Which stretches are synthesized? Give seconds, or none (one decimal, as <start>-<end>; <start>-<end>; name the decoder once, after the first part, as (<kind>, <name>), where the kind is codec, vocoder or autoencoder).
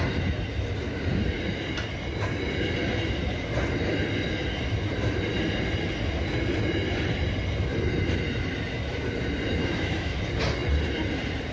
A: 9.6-10.2 (autoencoder, DAC-VAE)